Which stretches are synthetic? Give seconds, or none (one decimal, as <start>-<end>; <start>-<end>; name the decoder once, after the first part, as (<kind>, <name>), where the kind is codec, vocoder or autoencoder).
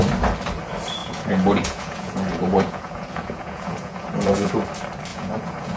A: 1.0-4.5 (vocoder, Vocos); 5.1-5.8